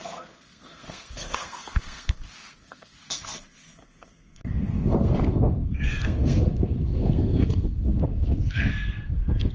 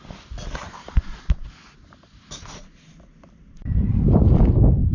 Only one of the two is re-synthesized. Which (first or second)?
first